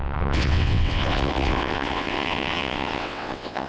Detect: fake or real fake